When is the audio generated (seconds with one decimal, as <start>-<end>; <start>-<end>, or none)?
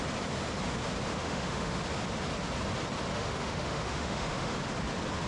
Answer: 1.1-1.8; 3.1-4.5